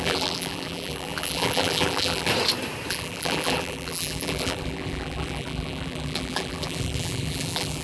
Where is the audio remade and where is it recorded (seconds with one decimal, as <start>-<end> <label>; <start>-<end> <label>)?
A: 0.0-2.3 remade; 2.3-2.9 recorded; 2.9-7.8 remade